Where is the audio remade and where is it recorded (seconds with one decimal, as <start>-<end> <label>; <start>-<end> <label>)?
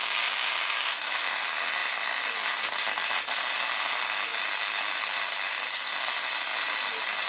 0.0-1.3 remade; 1.3-7.3 recorded